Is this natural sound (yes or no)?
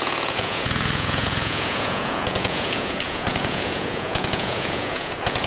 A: no